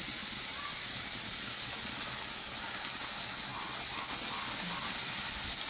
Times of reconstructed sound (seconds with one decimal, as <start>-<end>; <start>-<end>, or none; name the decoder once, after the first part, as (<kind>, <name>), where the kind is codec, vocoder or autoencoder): none